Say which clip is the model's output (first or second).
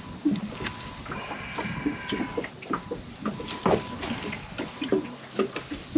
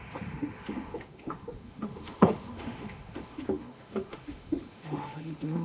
second